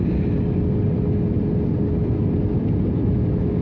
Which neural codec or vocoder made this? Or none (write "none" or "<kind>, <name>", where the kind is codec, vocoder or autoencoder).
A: none